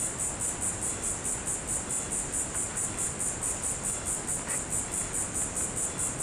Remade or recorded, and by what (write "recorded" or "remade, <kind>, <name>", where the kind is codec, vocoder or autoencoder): recorded